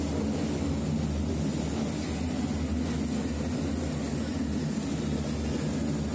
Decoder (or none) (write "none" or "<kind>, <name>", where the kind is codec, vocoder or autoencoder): none